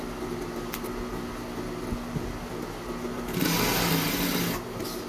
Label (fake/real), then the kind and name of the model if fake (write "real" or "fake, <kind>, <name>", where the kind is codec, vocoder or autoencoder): real